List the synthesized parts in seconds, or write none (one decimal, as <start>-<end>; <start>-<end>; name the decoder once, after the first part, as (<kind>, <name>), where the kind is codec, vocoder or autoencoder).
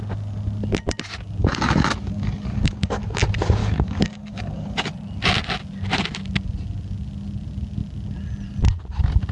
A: 1.4-3.2 (codec, DAC); 3.6-4.9